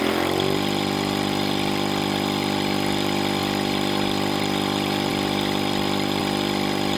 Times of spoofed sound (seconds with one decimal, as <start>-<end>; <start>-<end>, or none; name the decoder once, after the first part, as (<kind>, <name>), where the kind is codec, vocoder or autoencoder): none